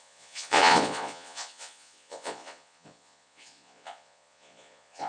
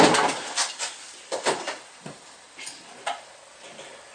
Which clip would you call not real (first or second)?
first